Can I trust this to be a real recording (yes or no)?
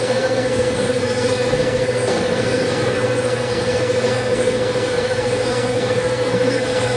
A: no